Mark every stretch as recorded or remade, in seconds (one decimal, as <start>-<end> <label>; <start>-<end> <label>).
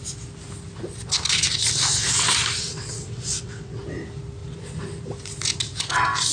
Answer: 0.0-2.6 recorded; 2.6-3.8 remade; 3.8-6.3 recorded